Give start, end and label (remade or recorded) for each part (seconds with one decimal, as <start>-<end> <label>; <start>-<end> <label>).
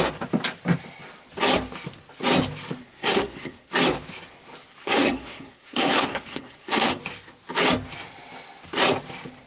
0.0-2.8 recorded; 2.8-3.7 remade; 3.7-4.8 recorded; 4.8-7.0 remade; 7.0-9.5 recorded